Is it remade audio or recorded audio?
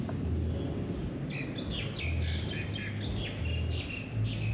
recorded